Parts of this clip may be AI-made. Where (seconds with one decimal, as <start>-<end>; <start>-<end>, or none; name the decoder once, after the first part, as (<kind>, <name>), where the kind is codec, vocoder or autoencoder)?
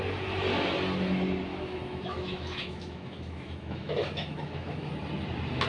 1.5-4.9 (autoencoder, DAC-VAE)